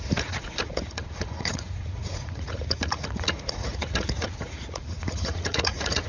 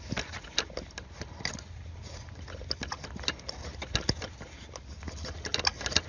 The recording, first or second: second